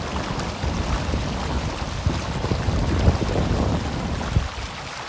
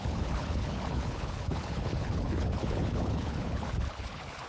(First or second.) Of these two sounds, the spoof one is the second